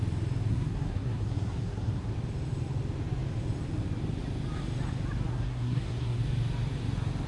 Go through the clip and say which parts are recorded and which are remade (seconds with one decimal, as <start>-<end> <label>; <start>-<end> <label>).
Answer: 0.0-0.5 recorded; 0.5-2.1 remade; 2.1-5.3 recorded; 5.3-6.2 remade; 6.2-7.3 recorded